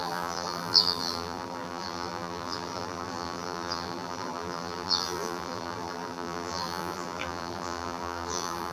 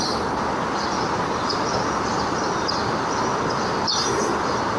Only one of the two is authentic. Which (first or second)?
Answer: second